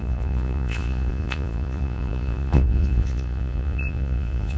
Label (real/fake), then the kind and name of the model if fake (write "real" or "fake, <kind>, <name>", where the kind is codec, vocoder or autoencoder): fake, vocoder, Vocos